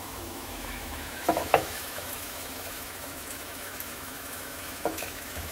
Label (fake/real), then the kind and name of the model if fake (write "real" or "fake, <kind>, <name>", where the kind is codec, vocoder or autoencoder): fake, autoencoder, DAC-VAE